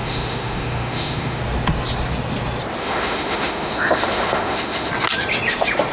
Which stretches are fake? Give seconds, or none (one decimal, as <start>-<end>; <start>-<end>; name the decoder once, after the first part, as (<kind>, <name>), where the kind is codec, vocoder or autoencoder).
0.0-1.4 (autoencoder, DAC-VAE); 2.8-4.9